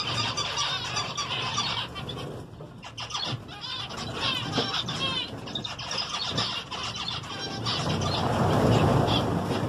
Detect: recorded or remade recorded